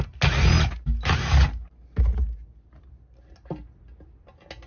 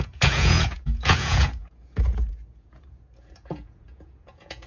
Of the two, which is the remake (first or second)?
second